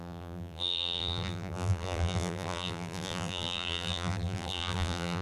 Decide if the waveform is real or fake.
fake